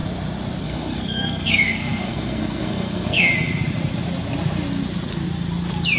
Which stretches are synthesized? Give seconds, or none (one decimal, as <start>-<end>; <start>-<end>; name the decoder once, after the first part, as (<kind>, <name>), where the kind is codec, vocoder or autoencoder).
0.6-3.3 (codec, SNAC)

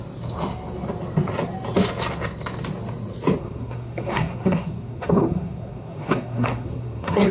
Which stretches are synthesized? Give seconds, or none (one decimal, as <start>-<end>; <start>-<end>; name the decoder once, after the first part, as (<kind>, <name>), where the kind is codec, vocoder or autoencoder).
3.4-7.3 (codec, SNAC)

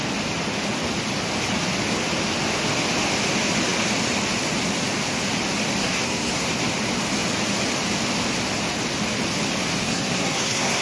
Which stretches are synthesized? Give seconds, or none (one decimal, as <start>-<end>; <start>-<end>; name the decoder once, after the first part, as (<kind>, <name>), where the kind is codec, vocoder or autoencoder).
5.8-6.5 (codec, SNAC); 9.9-10.8

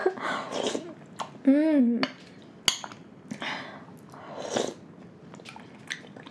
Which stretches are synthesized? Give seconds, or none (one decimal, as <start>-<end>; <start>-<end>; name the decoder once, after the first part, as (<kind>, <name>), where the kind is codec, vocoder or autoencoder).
none